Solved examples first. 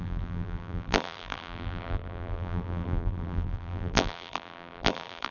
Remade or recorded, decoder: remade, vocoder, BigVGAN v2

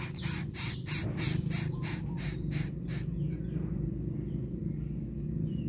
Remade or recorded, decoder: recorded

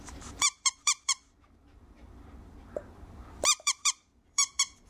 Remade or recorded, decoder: remade, vocoder, BigVGAN v2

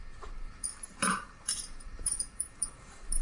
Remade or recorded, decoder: remade, vocoder, BigVGAN v2